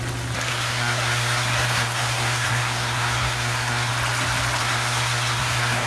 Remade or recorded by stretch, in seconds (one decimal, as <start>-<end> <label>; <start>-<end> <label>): 0.0-0.5 recorded; 0.5-3.9 remade; 3.9-4.6 recorded; 4.6-5.9 remade